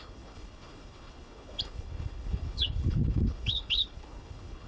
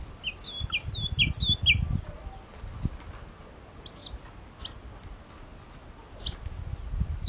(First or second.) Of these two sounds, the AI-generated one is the first